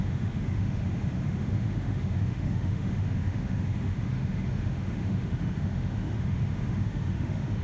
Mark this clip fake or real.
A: fake